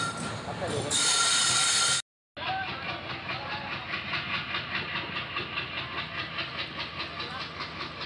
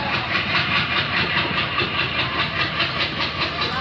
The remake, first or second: second